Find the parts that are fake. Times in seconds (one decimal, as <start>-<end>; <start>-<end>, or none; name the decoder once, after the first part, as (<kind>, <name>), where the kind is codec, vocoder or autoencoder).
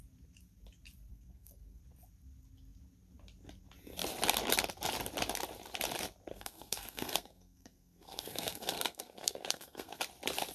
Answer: 1.1-1.8 (codec, SNAC); 6.3-10.0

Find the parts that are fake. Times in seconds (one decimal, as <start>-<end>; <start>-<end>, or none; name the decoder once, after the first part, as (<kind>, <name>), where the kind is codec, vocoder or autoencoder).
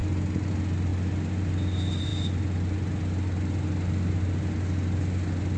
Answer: none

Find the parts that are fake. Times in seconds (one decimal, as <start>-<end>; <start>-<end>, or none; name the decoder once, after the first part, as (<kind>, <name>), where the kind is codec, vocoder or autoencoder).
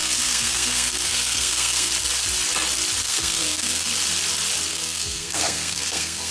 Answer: 0.0-1.9 (codec, SNAC); 3.0-3.9; 4.7-6.3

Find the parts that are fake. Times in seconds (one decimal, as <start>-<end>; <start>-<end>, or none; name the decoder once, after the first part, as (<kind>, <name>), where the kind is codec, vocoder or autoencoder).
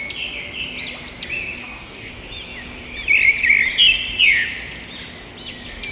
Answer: 1.6-2.1 (codec, DAC)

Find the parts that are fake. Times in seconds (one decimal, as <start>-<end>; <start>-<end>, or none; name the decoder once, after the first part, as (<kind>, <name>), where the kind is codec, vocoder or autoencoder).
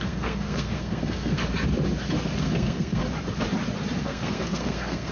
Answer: 0.0-1.4 (codec, SNAC); 2.4-3.0; 4.0-5.1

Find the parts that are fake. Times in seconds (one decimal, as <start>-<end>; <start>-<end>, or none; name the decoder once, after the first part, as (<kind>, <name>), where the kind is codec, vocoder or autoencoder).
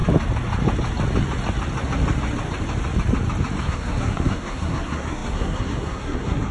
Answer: 3.6-6.5 (codec, SNAC)